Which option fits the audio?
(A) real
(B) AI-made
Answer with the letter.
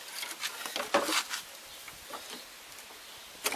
A